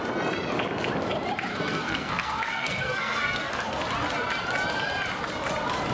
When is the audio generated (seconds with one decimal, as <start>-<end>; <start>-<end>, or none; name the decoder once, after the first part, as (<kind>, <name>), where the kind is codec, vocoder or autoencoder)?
1.5-3.8 (codec, SNAC)